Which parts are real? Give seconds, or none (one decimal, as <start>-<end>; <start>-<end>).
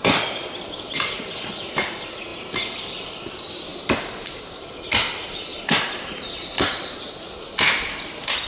0.0-3.7; 4.4-5.5; 7.0-8.5